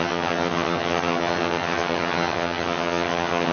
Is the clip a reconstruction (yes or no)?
yes